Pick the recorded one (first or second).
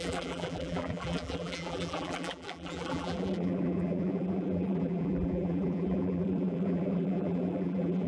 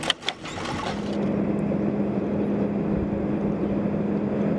second